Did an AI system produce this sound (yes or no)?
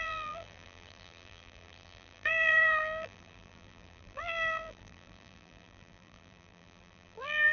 yes